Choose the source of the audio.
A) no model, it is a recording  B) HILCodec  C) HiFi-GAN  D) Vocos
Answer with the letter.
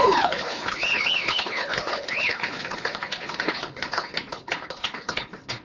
B